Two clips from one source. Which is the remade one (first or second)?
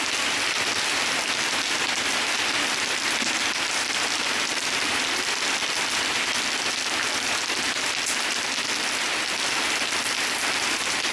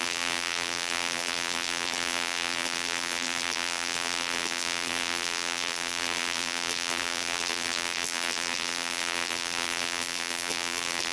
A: second